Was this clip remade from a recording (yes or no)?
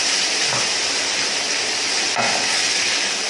no